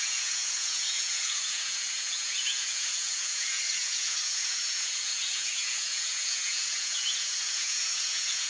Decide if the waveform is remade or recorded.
remade